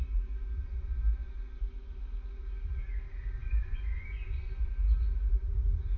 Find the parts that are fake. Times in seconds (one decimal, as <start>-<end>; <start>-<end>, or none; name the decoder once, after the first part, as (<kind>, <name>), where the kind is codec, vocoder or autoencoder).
3.4-4.7 (vocoder, Vocos)